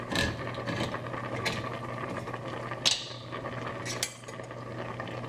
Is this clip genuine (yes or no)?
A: yes